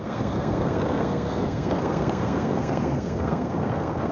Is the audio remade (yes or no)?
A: yes